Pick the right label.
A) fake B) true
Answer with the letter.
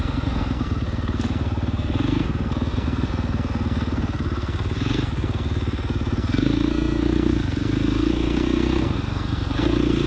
A